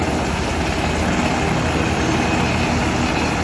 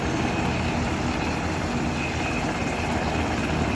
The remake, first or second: second